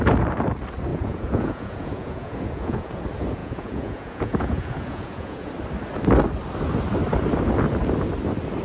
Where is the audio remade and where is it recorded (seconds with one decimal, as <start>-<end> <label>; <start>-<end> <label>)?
0.0-0.9 recorded; 0.9-3.0 remade; 3.0-3.4 recorded; 3.4-5.5 remade; 5.5-8.6 recorded